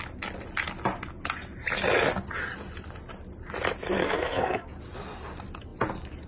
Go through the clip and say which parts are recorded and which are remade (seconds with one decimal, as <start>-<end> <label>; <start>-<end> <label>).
0.0-4.0 recorded; 4.0-4.7 remade; 4.7-6.3 recorded